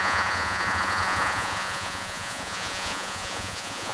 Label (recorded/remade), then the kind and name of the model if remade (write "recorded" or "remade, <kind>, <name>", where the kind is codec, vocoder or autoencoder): remade, vocoder, Vocos